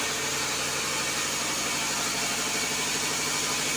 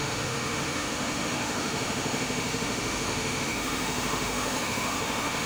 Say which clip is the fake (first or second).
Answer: second